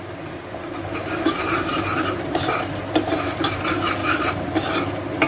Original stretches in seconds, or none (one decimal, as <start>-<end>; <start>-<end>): 0.0-1.7; 2.6-4.0; 4.7-5.3